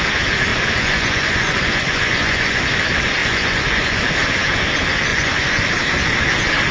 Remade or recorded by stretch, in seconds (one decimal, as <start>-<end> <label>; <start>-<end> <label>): 0.0-0.5 recorded; 0.5-2.6 remade; 2.6-3.2 recorded; 3.2-4.0 remade; 4.0-5.1 recorded; 5.1-5.7 remade; 5.7-6.7 recorded